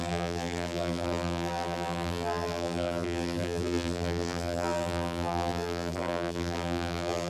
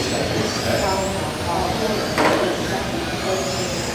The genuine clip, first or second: second